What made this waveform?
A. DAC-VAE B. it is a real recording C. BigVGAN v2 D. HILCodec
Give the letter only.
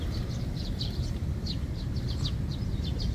C